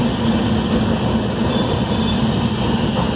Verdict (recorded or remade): recorded